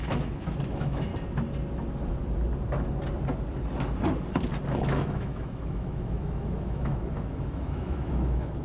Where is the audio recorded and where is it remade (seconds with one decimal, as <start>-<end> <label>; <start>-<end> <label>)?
0.0-1.1 remade; 1.1-4.8 recorded; 4.8-8.6 remade